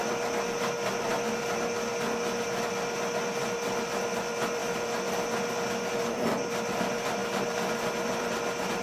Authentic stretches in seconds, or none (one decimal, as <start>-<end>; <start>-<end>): 0.0-8.8